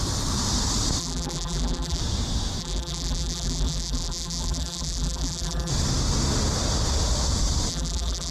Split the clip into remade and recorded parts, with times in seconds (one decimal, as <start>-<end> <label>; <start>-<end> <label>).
0.0-1.0 recorded; 1.0-2.0 remade; 2.0-2.6 recorded; 2.6-5.7 remade; 5.7-7.7 recorded; 7.7-8.3 remade